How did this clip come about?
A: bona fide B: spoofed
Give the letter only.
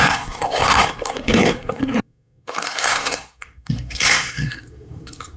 B